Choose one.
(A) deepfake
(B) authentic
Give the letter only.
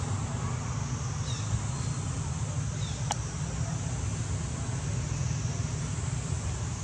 B